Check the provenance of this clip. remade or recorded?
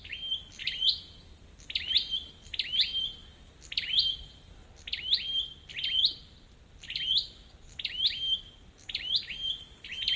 recorded